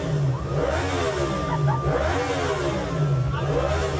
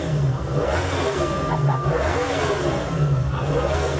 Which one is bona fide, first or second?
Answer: first